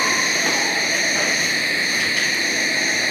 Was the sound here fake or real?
real